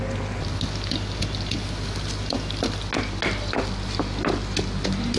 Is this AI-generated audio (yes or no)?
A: no